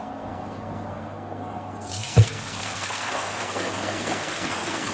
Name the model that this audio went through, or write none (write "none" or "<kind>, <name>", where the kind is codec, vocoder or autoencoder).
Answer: codec, SNAC